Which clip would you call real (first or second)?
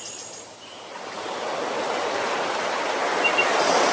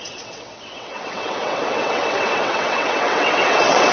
first